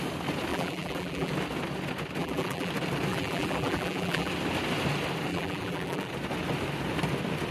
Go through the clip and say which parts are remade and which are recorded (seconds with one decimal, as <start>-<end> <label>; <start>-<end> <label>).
0.0-0.5 recorded; 0.5-1.3 remade; 1.3-2.2 recorded; 2.2-2.7 remade; 2.7-3.1 recorded; 3.1-4.3 remade; 4.3-5.3 recorded; 5.3-6.1 remade; 6.1-7.5 recorded